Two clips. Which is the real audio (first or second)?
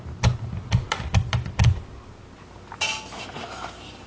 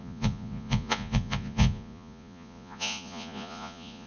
first